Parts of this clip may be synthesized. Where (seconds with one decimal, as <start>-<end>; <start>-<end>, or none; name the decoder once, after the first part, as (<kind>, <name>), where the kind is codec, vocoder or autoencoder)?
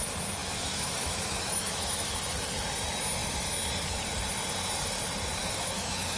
0.4-2.2 (autoencoder, DAC-VAE); 5.4-6.2